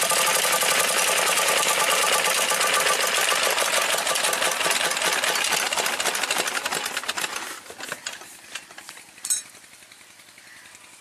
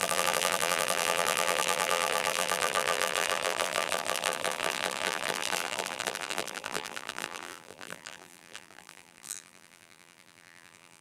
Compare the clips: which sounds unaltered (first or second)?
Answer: first